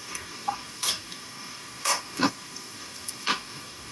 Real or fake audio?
fake